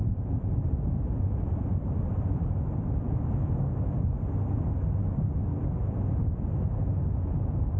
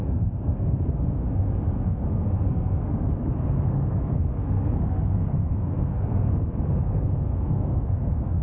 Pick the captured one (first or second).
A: first